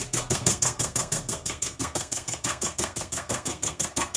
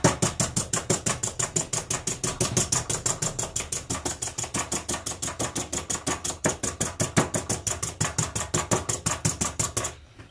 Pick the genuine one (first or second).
second